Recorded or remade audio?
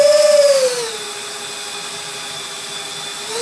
recorded